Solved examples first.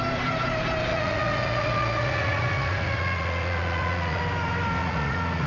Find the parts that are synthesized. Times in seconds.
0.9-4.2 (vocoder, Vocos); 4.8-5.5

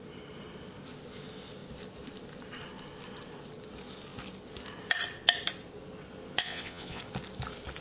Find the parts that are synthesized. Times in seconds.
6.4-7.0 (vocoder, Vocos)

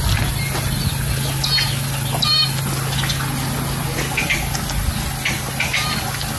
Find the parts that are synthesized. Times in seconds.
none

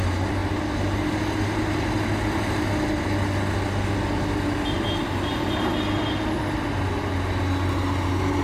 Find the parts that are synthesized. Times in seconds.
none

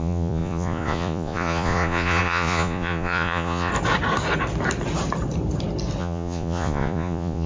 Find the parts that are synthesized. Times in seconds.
0.0-3.7 (vocoder, Vocos); 6.0-7.5